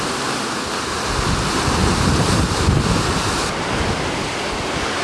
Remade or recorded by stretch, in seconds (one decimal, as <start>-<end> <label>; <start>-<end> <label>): 0.0-1.8 recorded; 1.8-3.5 remade; 3.5-5.0 recorded